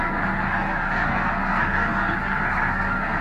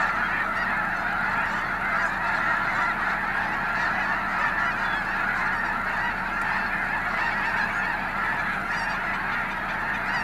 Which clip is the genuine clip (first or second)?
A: second